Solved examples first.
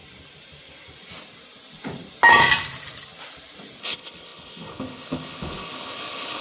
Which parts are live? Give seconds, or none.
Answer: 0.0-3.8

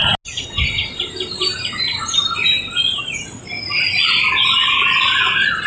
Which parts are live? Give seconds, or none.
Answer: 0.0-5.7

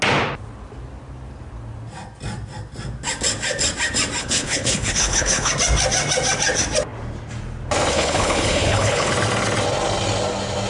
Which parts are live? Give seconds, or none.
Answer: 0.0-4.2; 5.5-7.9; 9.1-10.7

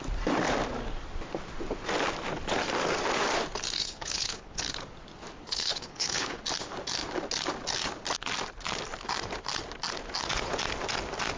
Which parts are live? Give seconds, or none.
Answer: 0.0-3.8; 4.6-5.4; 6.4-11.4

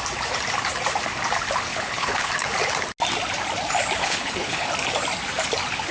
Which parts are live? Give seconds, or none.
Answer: 0.0-1.7; 2.3-4.0; 4.7-5.9

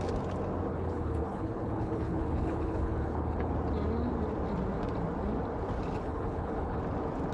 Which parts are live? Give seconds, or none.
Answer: 0.0-0.7; 3.5-6.0; 6.8-7.3